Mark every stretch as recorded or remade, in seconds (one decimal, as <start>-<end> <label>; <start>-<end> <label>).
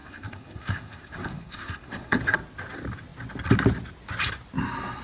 0.0-2.2 remade; 2.2-5.0 recorded